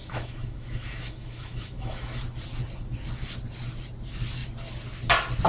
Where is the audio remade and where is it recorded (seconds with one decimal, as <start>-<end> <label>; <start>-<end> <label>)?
0.0-2.2 remade; 2.2-5.5 recorded